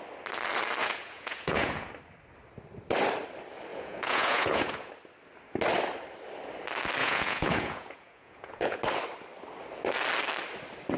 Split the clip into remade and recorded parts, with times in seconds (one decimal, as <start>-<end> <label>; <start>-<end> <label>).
0.0-0.8 recorded; 0.8-1.9 remade; 1.9-3.7 recorded; 3.7-4.9 remade; 4.9-7.0 recorded; 7.0-8.8 remade; 8.8-11.0 recorded